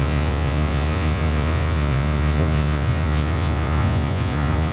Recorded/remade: remade